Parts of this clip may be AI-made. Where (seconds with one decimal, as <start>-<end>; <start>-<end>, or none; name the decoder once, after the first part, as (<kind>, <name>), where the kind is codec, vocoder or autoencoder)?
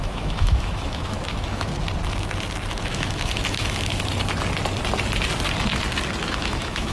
0.0-1.7 (autoencoder, DAC-VAE); 2.8-3.9; 6.2-6.9